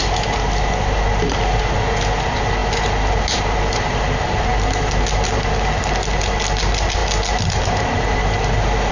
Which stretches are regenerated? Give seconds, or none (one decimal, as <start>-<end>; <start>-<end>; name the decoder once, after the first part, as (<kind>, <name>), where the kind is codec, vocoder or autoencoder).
none